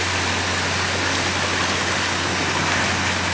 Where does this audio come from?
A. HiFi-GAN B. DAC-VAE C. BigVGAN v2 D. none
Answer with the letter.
D